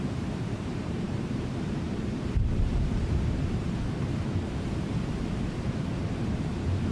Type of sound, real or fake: fake